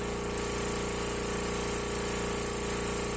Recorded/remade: recorded